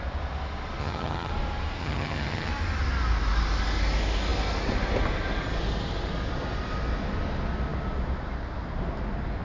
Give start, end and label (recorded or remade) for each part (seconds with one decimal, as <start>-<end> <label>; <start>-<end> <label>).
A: 0.0-0.8 recorded; 0.8-1.3 remade; 1.3-1.8 recorded; 1.8-2.5 remade; 2.5-9.4 recorded